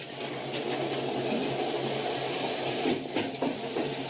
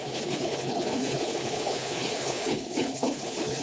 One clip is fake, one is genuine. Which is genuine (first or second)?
first